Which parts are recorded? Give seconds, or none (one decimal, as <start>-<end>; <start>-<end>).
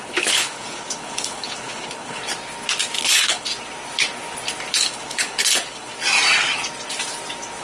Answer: 2.2-3.0; 3.5-4.7; 5.9-7.6